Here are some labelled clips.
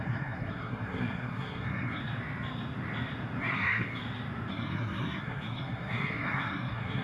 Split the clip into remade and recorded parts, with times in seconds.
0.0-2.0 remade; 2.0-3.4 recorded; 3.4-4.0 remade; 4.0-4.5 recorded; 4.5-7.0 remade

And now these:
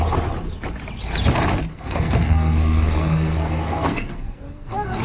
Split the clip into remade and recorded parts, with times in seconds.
0.0-1.7 recorded; 1.7-5.0 remade

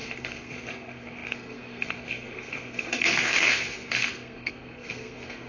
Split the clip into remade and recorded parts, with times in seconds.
0.0-5.5 remade

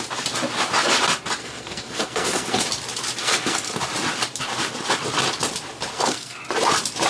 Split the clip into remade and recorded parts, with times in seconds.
0.0-1.4 recorded; 1.4-2.6 remade; 2.6-3.2 recorded; 3.2-3.7 remade; 3.7-5.9 recorded; 5.9-6.4 remade; 6.4-7.1 recorded

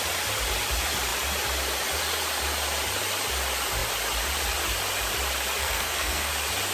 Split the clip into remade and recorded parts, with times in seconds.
0.0-5.6 recorded; 5.6-6.3 remade; 6.3-6.7 recorded

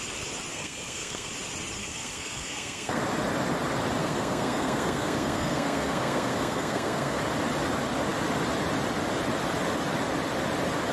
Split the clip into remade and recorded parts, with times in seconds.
0.0-0.5 recorded; 0.5-1.3 remade; 1.3-1.8 recorded; 1.8-3.0 remade; 3.0-4.0 recorded; 4.0-7.2 remade; 7.2-10.9 recorded